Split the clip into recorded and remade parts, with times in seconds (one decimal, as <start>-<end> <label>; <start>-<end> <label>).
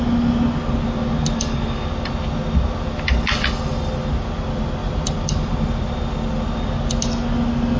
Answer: 0.0-4.8 recorded; 4.8-6.0 remade; 6.0-7.8 recorded